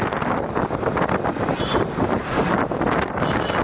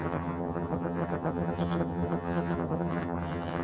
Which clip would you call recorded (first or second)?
first